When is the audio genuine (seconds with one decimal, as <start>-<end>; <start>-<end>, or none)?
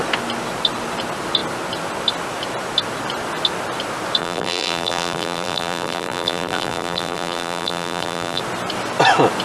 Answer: 0.0-4.2; 8.4-9.4